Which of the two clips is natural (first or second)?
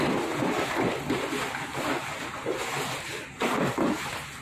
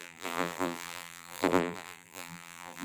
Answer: first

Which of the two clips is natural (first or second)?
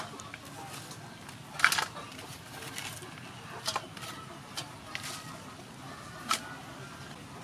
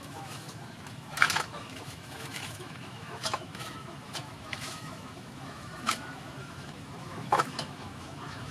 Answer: first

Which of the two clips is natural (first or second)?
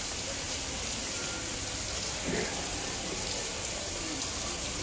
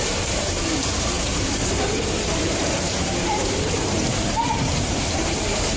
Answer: first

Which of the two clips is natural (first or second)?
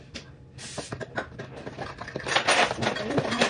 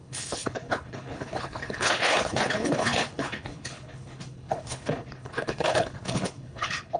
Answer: first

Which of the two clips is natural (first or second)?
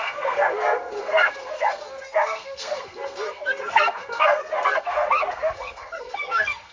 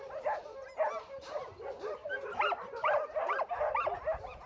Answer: second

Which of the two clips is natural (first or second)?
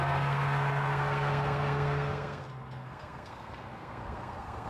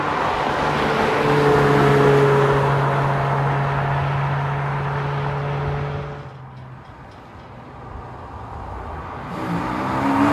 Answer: second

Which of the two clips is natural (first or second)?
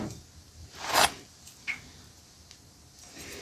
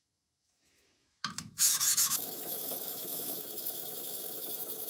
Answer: first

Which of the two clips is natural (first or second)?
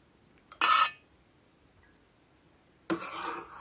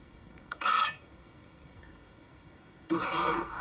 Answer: first